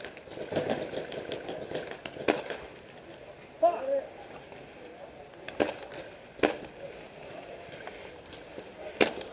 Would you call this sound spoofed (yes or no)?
no